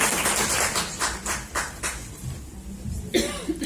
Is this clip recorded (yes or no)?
no